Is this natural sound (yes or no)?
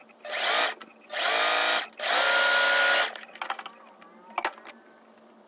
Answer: yes